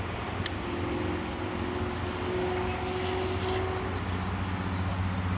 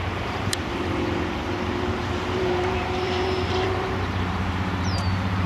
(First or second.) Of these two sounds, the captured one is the first